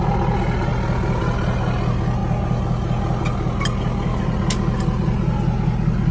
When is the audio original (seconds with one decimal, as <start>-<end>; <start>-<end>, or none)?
0.0-6.1